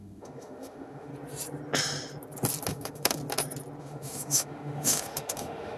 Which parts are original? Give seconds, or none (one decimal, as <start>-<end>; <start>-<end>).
1.1-2.7; 3.2-3.8